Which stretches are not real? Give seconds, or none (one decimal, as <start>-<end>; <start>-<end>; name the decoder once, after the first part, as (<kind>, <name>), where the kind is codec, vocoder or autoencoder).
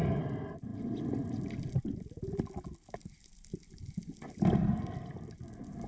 none